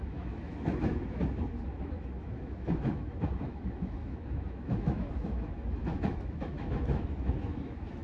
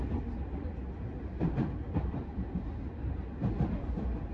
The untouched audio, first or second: second